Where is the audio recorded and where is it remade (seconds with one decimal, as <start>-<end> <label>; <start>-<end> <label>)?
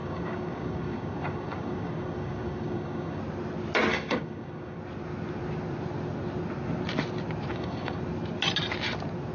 0.0-3.2 remade; 3.2-3.9 recorded; 3.9-4.8 remade; 4.8-7.5 recorded; 7.5-8.0 remade; 8.0-9.3 recorded